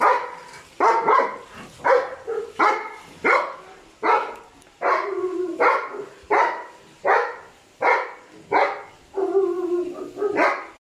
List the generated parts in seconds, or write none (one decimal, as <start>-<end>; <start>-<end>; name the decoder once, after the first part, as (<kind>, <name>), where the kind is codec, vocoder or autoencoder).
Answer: none